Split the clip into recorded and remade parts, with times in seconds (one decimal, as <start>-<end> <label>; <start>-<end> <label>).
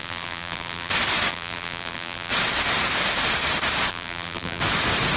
0.0-0.9 remade; 0.9-1.3 recorded; 1.3-2.3 remade; 2.3-3.9 recorded; 3.9-4.6 remade; 4.6-5.2 recorded